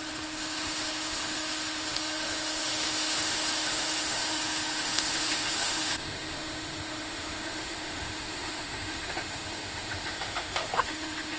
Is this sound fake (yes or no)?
yes